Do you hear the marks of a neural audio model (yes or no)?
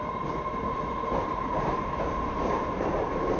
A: no